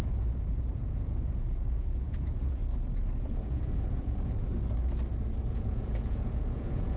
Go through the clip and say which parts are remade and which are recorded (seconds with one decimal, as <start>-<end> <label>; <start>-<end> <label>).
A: 0.0-2.6 remade; 2.6-3.2 recorded; 3.2-4.5 remade; 4.5-5.5 recorded; 5.5-7.0 remade